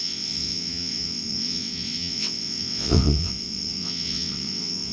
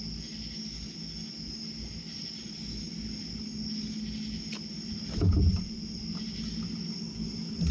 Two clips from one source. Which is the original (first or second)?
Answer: second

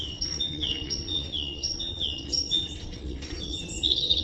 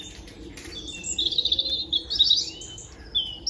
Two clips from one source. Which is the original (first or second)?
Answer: second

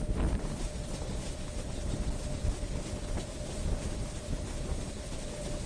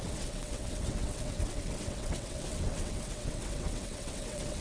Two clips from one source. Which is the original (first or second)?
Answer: first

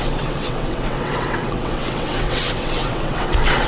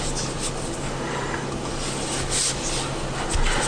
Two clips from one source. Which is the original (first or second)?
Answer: second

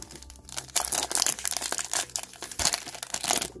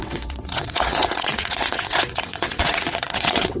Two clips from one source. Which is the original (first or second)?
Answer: first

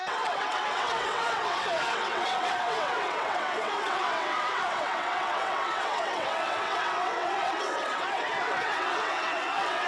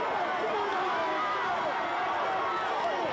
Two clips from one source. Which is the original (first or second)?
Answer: second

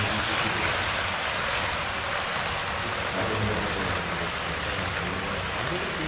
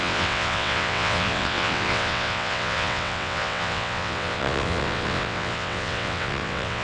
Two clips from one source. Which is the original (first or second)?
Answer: first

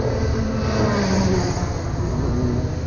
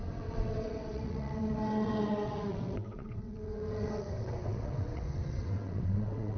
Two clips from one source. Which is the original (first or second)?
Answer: first